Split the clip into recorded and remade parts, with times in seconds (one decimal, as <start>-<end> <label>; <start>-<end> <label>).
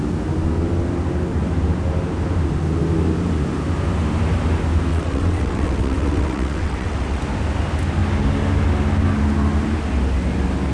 0.0-4.9 recorded; 4.9-7.2 remade; 7.2-10.7 recorded